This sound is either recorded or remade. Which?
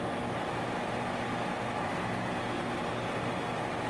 recorded